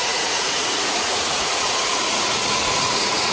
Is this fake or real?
fake